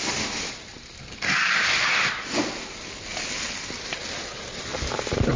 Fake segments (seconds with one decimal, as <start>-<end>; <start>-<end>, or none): none

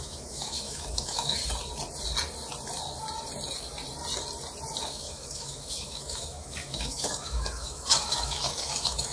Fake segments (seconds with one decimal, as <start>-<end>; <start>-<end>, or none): 0.0-1.4; 4.8-9.1